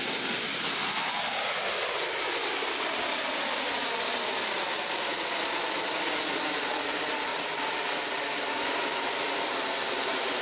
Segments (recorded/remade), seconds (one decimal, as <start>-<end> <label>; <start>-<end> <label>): 0.0-10.4 recorded